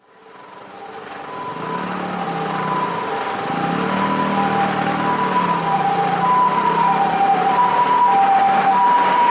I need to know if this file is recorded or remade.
recorded